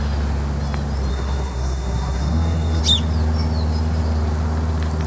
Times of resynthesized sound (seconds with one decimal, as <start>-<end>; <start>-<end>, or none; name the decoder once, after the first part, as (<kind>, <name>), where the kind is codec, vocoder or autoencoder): 1.1-2.8 (codec, SNAC)

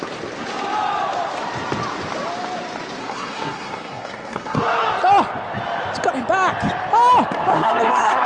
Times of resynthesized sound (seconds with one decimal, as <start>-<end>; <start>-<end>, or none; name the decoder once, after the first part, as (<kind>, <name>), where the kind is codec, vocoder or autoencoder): 3.0-4.6 (codec, SNAC); 7.5-8.3

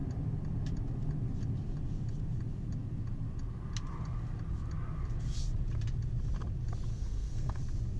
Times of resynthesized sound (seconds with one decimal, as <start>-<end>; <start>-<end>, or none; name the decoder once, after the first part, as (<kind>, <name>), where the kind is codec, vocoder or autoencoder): 6.9-7.6 (codec, SNAC)

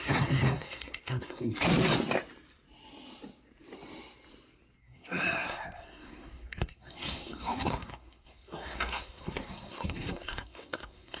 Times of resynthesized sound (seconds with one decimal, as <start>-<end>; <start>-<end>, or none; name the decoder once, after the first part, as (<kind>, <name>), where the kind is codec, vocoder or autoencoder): 0.0-1.7 (codec, SNAC); 4.8-11.2

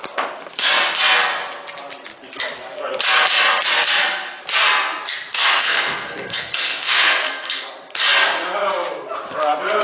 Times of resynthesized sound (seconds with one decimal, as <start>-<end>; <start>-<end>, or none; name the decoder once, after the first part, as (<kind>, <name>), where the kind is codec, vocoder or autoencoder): 5.3-7.7 (codec, SNAC)

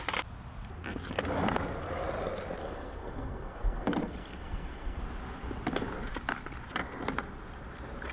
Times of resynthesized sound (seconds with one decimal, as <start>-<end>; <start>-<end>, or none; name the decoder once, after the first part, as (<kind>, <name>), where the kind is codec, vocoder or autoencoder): 2.6-5.0 (codec, SNAC)

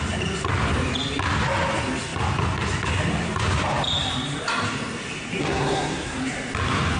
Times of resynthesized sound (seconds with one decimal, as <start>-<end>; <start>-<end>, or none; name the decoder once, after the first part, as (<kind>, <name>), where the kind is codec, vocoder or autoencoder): 5.4-6.2 (codec, SNAC)

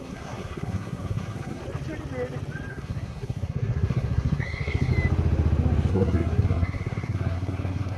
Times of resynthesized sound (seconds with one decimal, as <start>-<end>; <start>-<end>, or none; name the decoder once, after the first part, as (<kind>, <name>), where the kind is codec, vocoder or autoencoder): 0.0-1.6 (codec, SNAC); 2.7-4.9; 5.9-8.0